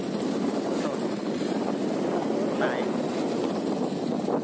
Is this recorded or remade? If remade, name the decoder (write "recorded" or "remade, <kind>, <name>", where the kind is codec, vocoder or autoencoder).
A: recorded